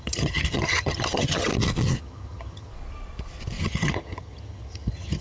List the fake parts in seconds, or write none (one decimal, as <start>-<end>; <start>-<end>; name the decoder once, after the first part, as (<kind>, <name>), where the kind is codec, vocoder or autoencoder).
0.0-1.5 (vocoder, HiFi-GAN); 2.0-2.7; 3.6-5.2